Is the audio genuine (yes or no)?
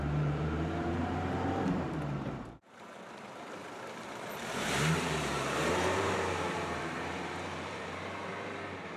no